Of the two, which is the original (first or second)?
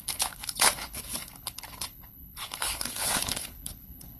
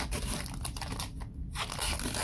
second